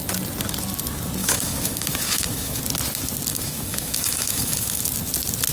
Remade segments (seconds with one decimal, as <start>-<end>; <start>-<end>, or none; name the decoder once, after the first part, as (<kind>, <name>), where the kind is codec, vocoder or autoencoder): 1.2-2.6 (autoencoder, DAC-VAE); 3.3-4.8

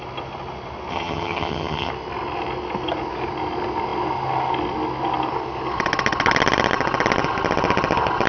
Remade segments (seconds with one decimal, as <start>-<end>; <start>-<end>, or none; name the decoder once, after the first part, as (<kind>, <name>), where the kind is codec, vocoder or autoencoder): 0.9-1.9 (vocoder, HiFi-GAN)

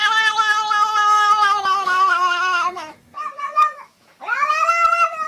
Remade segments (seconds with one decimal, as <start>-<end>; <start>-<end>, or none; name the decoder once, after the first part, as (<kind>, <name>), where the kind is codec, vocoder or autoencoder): 1.0-4.2 (autoencoder, DAC-VAE)

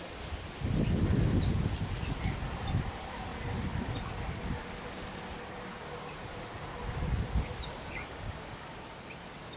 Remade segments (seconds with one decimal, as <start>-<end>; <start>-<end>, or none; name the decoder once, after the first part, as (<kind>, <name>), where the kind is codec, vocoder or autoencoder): none

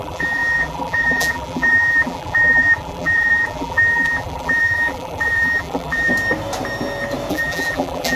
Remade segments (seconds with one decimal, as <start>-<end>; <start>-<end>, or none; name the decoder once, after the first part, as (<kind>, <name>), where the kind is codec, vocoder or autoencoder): 0.0-6.1 (vocoder, BigVGAN v2); 7.3-8.2

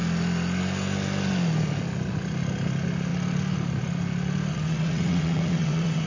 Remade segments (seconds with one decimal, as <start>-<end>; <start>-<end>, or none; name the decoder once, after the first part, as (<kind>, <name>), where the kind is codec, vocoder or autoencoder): 4.5-6.1 (vocoder, WaveNeXt)